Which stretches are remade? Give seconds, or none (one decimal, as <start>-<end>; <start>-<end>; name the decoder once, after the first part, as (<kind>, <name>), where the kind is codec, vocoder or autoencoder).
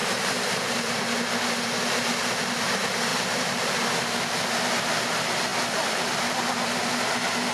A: 0.0-1.0 (vocoder, BigVGAN v2); 3.1-3.7